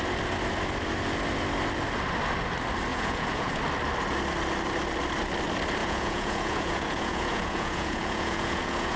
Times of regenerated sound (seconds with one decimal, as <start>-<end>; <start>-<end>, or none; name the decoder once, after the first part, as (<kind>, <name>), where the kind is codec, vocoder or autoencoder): 2.9-3.6 (vocoder, Vocos); 5.8-9.0